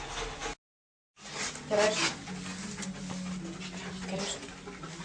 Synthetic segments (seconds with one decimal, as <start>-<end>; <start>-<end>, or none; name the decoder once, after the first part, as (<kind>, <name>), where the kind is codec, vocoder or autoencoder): none